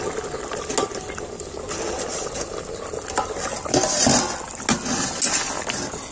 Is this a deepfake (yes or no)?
no